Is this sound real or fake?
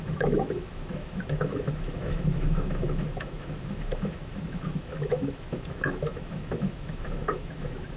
fake